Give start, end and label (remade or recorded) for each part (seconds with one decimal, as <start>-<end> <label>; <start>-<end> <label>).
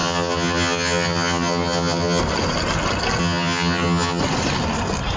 0.0-2.2 remade; 2.2-3.2 recorded; 3.2-4.2 remade; 4.2-5.2 recorded